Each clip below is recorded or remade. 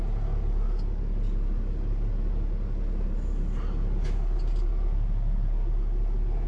recorded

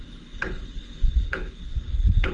remade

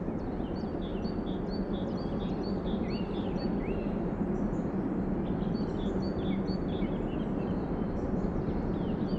recorded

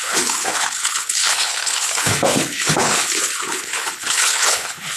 remade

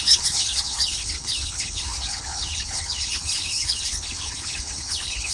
remade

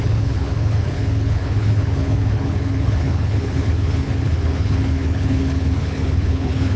remade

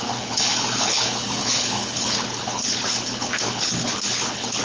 remade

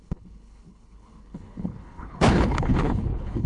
remade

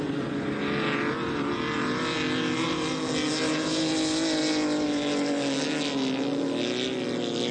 recorded